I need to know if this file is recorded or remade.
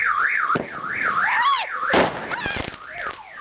recorded